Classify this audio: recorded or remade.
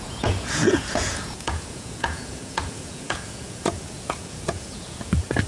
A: remade